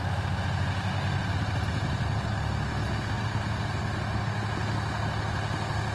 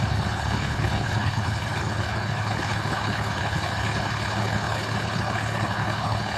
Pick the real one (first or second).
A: first